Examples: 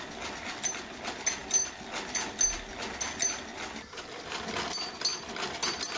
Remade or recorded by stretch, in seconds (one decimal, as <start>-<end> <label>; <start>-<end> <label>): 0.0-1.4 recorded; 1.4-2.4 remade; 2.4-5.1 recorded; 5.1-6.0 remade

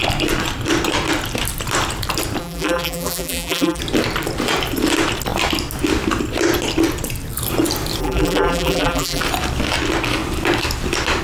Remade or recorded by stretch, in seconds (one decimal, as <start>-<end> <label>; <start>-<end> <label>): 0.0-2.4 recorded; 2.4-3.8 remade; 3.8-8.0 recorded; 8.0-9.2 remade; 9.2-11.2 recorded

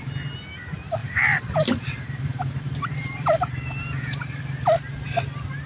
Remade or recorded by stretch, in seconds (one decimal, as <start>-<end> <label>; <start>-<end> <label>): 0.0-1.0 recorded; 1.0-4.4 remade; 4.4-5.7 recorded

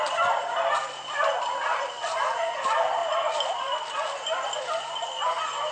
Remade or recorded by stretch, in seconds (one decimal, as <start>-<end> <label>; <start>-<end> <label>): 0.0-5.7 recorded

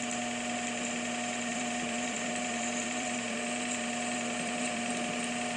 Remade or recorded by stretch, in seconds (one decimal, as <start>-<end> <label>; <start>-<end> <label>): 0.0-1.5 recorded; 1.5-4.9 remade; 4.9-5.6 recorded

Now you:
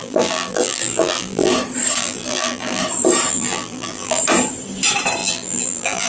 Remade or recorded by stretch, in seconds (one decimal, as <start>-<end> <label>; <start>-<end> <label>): 0.0-1.5 remade; 1.5-2.0 recorded; 2.0-2.8 remade; 2.8-3.3 recorded; 3.3-4.2 remade; 4.2-5.2 recorded; 5.2-6.1 remade